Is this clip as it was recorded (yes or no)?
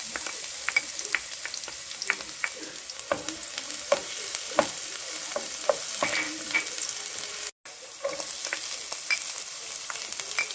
yes